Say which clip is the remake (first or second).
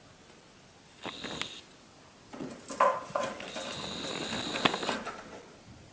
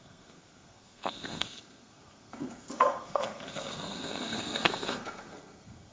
second